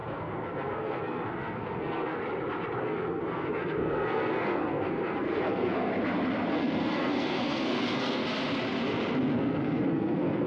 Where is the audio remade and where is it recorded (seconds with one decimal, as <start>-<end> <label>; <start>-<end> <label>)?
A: 0.0-2.2 remade; 2.2-2.8 recorded; 2.8-5.9 remade; 5.9-6.5 recorded; 6.5-8.2 remade; 8.2-9.3 recorded; 9.3-10.5 remade